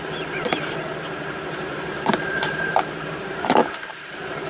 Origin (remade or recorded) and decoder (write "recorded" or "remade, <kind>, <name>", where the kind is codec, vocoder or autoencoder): remade, vocoder, BigVGAN v2